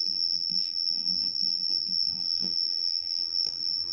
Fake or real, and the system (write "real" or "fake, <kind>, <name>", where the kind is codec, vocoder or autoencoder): fake, vocoder, BigVGAN v2